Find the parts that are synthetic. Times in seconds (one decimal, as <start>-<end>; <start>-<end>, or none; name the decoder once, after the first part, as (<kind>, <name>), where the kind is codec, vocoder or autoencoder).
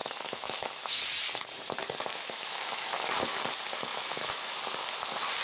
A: 0.0-1.0 (autoencoder, DAC-VAE); 2.1-3.1; 3.9-4.6